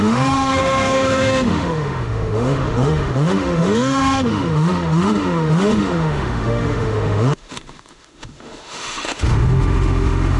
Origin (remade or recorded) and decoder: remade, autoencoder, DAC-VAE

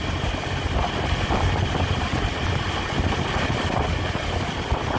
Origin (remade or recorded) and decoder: recorded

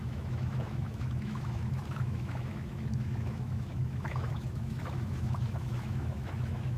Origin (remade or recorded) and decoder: remade, autoencoder, DAC-VAE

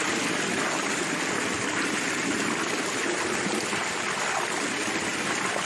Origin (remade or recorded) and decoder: recorded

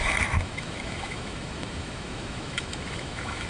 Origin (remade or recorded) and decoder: remade, autoencoder, DAC-VAE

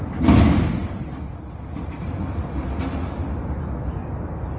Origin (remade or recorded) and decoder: recorded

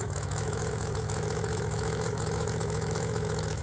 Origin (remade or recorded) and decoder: remade, autoencoder, DAC-VAE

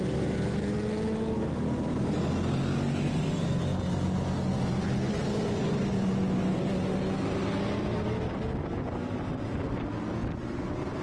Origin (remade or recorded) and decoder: recorded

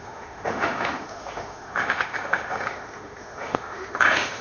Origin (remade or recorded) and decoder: remade, autoencoder, DAC-VAE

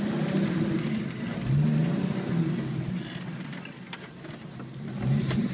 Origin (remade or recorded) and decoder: recorded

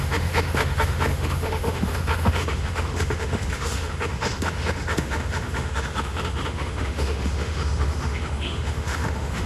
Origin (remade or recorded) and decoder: remade, autoencoder, DAC-VAE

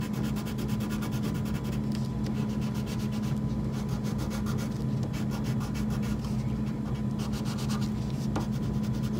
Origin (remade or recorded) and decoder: recorded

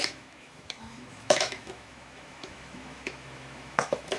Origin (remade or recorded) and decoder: remade, autoencoder, DAC-VAE